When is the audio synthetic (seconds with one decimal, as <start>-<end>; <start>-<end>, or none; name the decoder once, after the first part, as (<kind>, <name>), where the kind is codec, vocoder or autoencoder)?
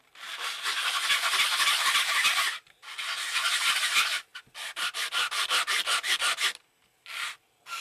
none